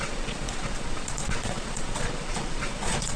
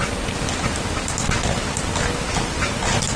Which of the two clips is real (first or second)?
second